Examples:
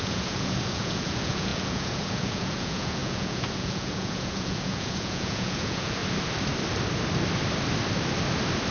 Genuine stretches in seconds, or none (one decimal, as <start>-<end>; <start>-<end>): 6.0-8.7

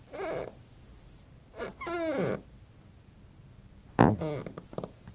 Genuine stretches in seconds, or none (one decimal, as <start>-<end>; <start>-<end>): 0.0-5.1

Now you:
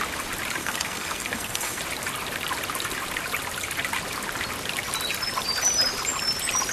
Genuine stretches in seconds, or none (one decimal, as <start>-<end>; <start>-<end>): 0.0-0.6; 1.8-6.7

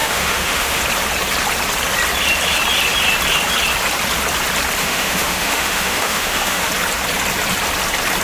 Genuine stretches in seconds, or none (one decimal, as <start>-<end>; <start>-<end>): 0.8-4.8; 6.7-8.2

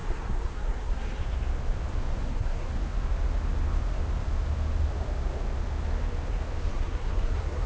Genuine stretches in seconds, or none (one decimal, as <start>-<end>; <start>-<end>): 1.2-2.2; 2.7-6.7

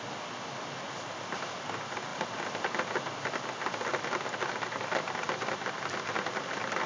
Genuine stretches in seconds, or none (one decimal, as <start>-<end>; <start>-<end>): 0.0-6.9